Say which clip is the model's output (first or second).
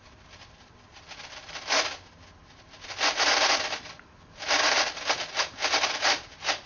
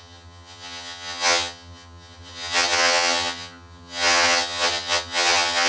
second